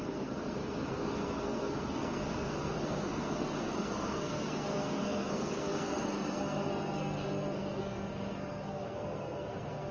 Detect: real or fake fake